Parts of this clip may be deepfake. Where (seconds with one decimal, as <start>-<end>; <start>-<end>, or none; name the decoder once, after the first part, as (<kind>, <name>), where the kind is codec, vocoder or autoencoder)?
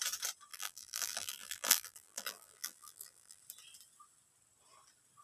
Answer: 0.5-3.4 (vocoder, BigVGAN v2)